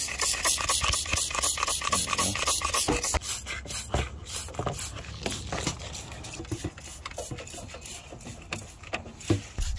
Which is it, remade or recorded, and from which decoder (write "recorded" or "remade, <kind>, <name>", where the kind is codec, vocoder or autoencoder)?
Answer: recorded